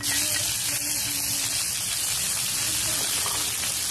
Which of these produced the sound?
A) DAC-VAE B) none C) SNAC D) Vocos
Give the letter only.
B